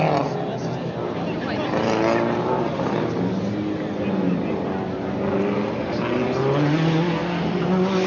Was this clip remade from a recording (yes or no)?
no